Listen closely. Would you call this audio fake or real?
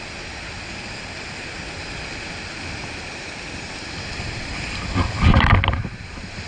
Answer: real